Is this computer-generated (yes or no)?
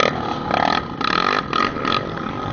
no